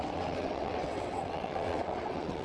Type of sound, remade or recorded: remade